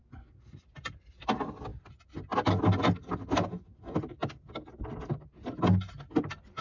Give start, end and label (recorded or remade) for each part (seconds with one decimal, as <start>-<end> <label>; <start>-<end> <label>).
0.0-6.6 recorded